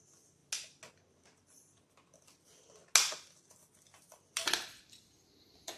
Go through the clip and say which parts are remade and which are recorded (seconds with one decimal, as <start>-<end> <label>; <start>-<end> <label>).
0.0-0.4 remade; 0.4-0.9 recorded; 0.9-2.8 remade; 2.8-4.1 recorded; 4.1-5.8 remade